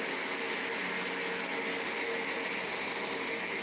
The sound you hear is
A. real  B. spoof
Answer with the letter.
A